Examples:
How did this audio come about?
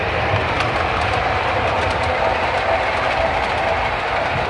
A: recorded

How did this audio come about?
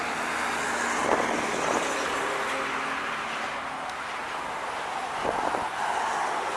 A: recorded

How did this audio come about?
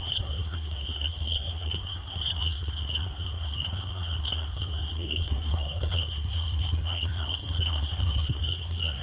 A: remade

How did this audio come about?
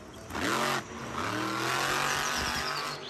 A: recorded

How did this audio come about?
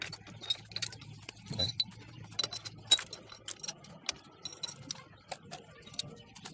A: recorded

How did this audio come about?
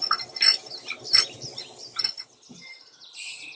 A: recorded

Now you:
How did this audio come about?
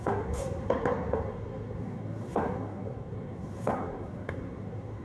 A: remade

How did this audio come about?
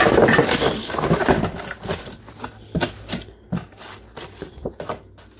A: recorded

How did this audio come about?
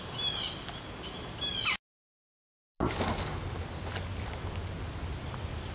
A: recorded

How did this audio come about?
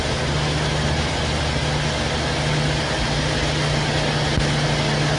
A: recorded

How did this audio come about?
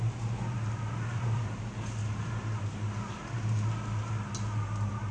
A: recorded